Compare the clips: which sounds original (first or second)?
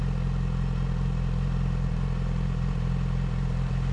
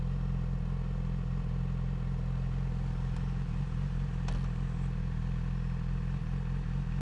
second